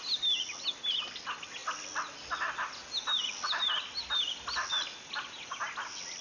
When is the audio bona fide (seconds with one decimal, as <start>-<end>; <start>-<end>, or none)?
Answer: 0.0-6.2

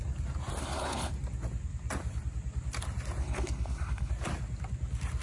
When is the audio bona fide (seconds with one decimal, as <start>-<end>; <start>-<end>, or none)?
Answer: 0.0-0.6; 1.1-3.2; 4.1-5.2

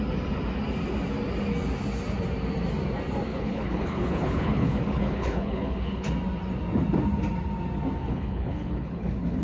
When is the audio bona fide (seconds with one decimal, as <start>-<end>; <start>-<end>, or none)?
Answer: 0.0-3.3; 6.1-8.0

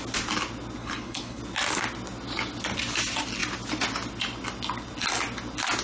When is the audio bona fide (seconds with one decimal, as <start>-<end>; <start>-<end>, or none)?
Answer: 0.0-0.8; 1.4-5.8